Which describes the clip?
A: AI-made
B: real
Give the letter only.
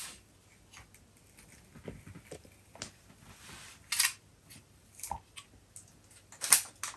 B